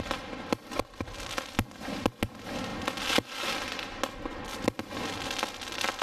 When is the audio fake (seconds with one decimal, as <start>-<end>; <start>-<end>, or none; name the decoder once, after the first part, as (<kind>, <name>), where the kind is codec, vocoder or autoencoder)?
none

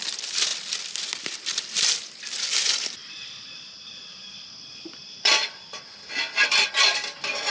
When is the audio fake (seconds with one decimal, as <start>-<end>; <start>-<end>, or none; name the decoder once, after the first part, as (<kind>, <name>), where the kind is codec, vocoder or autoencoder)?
none

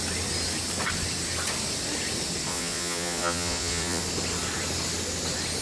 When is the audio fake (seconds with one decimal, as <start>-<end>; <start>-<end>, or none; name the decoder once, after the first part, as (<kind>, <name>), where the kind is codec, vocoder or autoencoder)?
2.5-4.0 (vocoder, Vocos)

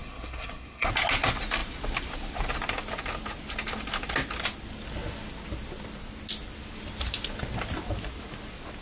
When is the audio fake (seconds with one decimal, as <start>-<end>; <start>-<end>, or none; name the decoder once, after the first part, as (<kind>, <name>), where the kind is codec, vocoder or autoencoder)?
0.0-0.9 (codec, SNAC)

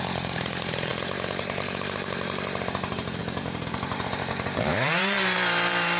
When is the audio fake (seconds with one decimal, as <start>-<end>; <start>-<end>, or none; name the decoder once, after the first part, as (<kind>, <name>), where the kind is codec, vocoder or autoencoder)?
0.0-6.0 (vocoder, BigVGAN v2)